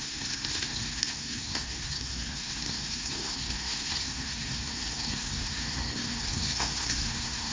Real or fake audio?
fake